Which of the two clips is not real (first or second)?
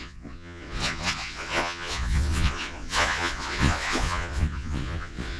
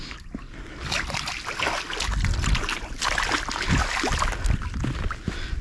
first